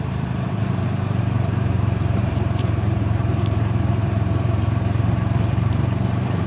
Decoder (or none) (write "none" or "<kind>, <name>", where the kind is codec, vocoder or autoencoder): vocoder, BigVGAN v2